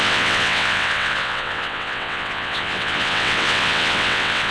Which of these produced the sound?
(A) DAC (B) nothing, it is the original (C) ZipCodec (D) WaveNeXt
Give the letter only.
D